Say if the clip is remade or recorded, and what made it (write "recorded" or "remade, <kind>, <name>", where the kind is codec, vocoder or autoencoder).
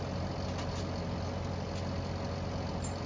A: recorded